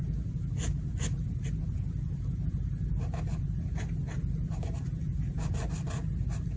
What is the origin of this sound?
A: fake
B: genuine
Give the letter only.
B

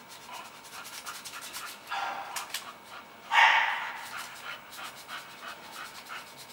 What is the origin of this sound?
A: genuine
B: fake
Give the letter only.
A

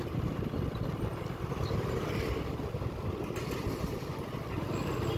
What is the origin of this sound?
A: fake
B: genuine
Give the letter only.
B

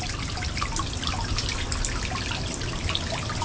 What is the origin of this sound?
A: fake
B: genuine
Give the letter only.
B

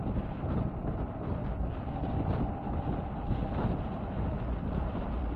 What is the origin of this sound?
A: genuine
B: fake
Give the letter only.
A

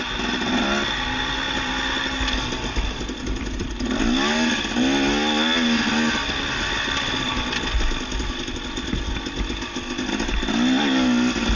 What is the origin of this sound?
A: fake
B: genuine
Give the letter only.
B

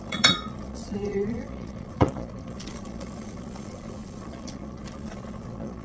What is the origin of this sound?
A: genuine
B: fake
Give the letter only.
B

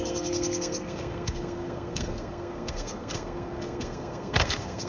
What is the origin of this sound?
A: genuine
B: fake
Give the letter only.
B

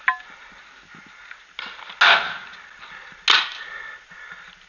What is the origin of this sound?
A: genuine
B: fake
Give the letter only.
A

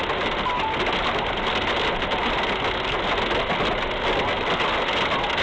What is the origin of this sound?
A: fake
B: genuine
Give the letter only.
B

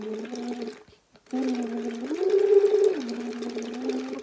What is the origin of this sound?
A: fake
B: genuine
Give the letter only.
B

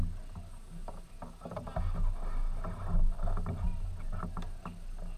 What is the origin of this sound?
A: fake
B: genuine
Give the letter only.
B